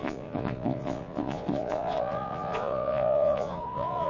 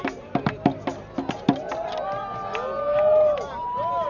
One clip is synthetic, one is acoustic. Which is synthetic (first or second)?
first